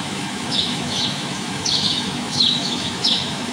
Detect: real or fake fake